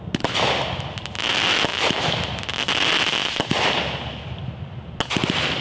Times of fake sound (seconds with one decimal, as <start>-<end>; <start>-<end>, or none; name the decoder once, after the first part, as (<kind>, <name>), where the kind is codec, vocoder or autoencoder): none